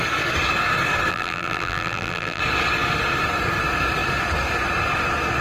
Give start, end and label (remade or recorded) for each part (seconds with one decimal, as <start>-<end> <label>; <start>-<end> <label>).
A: 0.0-1.1 recorded; 1.1-2.4 remade; 2.4-5.4 recorded